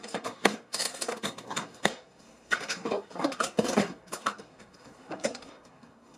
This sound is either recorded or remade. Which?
remade